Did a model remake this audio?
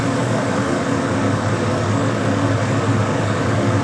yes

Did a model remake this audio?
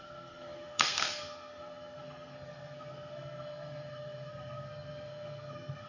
yes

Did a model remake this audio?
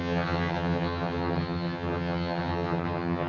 yes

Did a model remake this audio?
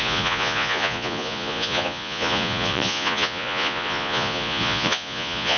yes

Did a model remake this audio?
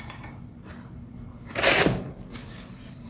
no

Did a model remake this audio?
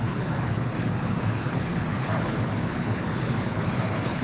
yes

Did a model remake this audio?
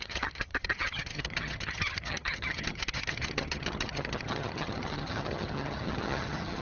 yes